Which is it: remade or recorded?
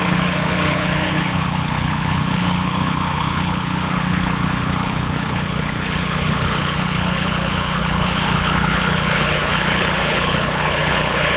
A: remade